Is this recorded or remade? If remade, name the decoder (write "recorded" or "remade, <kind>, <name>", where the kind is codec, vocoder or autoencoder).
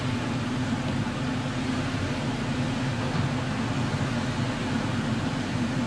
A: recorded